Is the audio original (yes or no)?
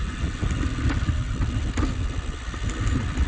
yes